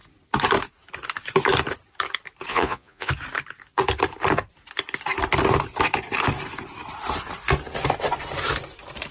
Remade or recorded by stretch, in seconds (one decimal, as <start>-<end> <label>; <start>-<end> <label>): 0.0-2.5 recorded; 2.5-3.1 remade; 3.1-9.1 recorded